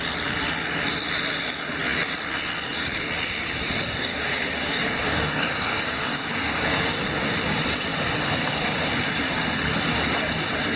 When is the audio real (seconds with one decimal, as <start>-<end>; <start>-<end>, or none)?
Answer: 0.0-4.1; 7.0-10.8